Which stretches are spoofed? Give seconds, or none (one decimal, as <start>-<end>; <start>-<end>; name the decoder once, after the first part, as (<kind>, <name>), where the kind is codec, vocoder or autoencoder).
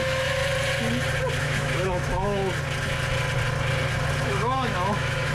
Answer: 0.0-0.4 (autoencoder, DAC-VAE); 1.4-2.4; 4.2-5.3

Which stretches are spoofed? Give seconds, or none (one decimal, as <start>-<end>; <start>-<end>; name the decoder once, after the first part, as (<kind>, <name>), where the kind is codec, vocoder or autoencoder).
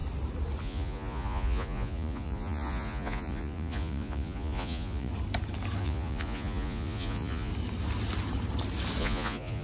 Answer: 0.6-5.1 (vocoder, Vocos); 5.8-7.5; 9.0-9.6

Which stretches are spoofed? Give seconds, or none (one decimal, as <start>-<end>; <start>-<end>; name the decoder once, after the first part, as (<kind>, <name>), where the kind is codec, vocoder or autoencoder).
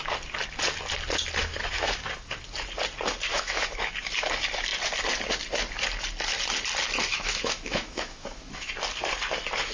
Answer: 1.4-2.0 (autoencoder, DAC-VAE); 3.3-3.9; 7.1-8.7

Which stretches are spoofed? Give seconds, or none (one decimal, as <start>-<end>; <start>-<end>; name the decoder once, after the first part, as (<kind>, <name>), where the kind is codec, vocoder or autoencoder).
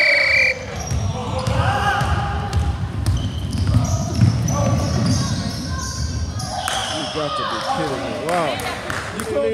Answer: 1.2-4.1 (vocoder, BigVGAN v2); 6.8-8.2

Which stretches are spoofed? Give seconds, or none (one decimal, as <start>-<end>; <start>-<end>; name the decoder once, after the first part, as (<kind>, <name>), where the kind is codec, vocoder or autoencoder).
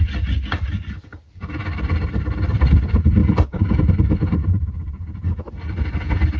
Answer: 1.1-2.7 (vocoder, BigVGAN v2); 3.2-5.4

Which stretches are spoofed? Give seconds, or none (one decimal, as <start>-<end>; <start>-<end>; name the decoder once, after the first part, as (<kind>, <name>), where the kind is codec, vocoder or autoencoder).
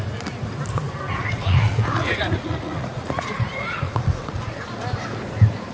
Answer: 1.1-4.5 (vocoder, Vocos)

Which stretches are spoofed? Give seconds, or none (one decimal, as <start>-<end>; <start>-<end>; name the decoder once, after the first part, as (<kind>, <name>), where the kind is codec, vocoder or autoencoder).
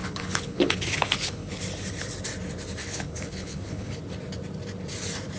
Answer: 0.0-1.6 (codec, HILCodec); 2.8-4.0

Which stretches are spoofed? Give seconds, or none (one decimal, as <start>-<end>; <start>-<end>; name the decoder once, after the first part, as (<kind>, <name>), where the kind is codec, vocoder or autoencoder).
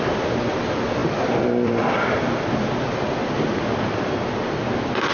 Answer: 1.0-4.1 (vocoder, BigVGAN v2)